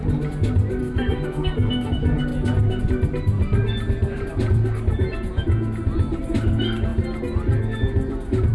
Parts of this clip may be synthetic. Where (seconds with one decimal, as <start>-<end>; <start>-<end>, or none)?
0.8-1.9